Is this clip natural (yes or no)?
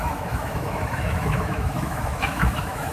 no